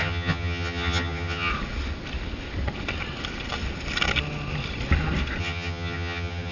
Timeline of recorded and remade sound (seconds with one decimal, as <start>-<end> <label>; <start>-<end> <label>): 0.0-1.5 remade; 1.5-5.4 recorded; 5.4-6.5 remade